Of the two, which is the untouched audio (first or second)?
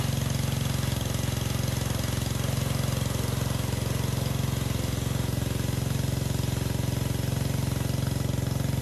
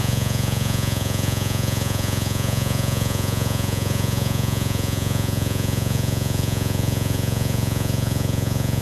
first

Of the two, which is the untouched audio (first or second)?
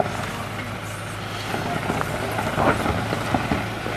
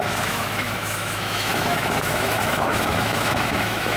first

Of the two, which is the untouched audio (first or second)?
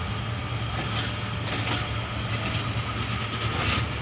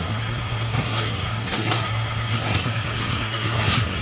first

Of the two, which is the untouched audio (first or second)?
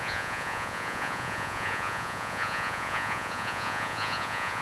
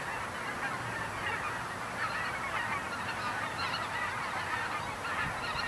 second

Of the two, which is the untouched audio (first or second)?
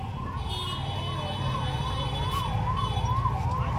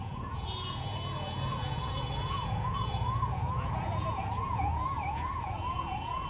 first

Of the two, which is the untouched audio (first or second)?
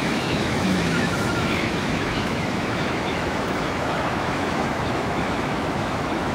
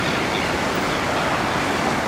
second